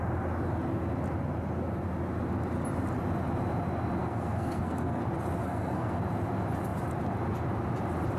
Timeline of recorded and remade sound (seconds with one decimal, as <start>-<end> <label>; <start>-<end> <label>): 0.0-4.0 recorded; 4.0-5.0 remade; 5.0-5.4 recorded; 5.4-6.0 remade; 6.0-8.2 recorded